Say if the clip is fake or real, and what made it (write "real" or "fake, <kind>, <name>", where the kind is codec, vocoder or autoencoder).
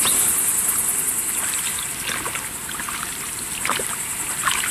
fake, vocoder, BigVGAN v2